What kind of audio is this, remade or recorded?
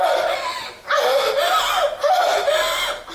recorded